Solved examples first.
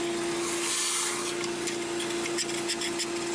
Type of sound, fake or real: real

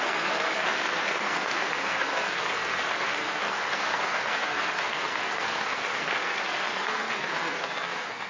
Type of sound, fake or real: fake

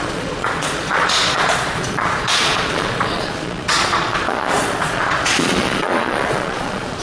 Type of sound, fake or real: fake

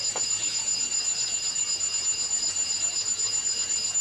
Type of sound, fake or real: fake